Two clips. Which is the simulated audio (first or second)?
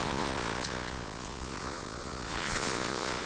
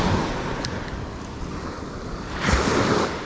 first